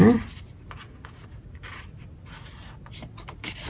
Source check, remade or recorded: recorded